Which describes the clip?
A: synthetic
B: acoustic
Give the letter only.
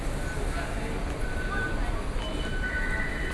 B